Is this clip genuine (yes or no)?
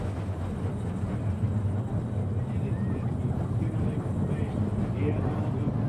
yes